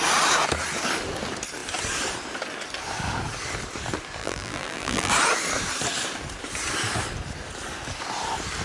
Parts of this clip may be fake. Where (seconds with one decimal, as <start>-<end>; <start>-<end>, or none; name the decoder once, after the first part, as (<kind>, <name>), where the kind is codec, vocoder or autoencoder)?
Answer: 4.2-5.1 (vocoder, BigVGAN v2)